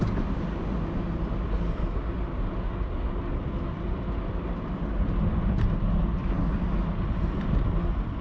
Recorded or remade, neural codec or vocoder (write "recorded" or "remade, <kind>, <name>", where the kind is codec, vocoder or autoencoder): recorded